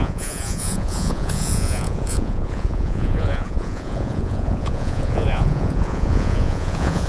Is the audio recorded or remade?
remade